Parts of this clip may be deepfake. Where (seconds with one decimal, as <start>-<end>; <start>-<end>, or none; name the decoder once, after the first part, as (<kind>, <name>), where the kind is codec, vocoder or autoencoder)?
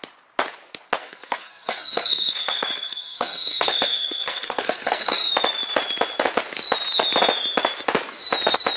1.0-5.3 (codec, SNAC)